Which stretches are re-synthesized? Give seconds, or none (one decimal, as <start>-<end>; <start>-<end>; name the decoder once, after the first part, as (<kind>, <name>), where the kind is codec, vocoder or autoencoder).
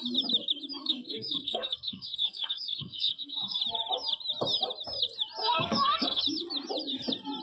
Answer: 0.8-3.6 (codec, SNAC); 5.4-6.2